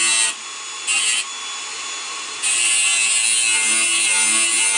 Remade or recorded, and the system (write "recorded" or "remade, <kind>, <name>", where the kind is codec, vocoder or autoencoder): recorded